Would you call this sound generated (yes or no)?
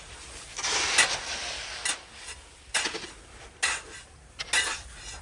no